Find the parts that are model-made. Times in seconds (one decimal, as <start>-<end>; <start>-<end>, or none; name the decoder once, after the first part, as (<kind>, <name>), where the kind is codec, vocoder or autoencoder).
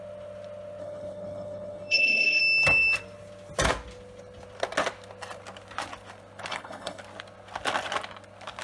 0.8-2.4 (codec, HILCodec); 6.5-7.0